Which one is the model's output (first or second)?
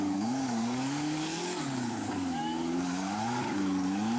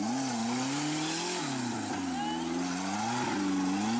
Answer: first